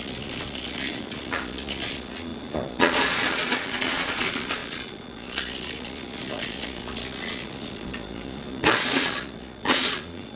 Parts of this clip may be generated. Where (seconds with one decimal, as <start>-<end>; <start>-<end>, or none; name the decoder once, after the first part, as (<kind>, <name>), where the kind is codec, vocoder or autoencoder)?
0.0-10.4 (vocoder, Vocos)